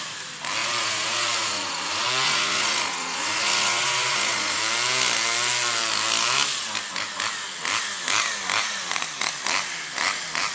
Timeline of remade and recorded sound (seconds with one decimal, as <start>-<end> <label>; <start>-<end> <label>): 0.0-0.6 recorded; 0.6-4.6 remade; 4.6-10.5 recorded